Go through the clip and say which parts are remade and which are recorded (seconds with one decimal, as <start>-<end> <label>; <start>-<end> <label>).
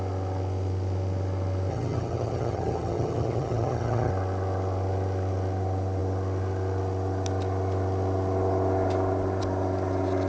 0.0-1.7 recorded; 1.7-4.1 remade; 4.1-10.3 recorded